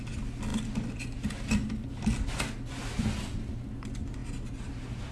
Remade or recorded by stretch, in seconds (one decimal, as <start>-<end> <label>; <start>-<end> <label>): 0.0-5.1 recorded